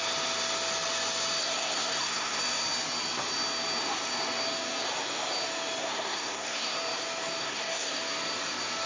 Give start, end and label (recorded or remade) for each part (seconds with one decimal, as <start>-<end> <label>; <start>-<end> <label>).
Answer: 0.0-1.4 recorded; 1.4-2.4 remade; 2.4-5.8 recorded; 5.8-6.8 remade; 6.8-7.4 recorded; 7.4-8.0 remade; 8.0-8.9 recorded